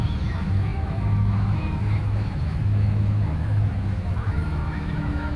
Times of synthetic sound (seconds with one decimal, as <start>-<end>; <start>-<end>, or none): 0.0-5.4